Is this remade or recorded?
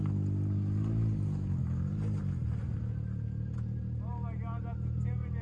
recorded